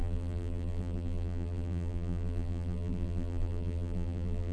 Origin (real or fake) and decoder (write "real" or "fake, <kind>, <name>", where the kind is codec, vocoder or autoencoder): fake, vocoder, BigVGAN v2